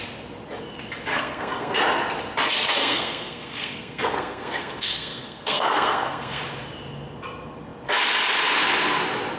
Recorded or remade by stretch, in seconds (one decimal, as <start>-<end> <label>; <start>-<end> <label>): 0.0-1.1 recorded; 1.1-1.8 remade; 1.8-2.8 recorded; 2.8-6.4 remade; 6.4-9.4 recorded